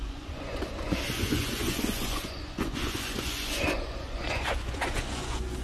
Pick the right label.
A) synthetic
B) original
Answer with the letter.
A